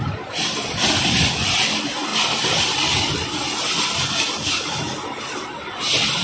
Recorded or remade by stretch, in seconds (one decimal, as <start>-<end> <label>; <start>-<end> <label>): 0.0-6.2 recorded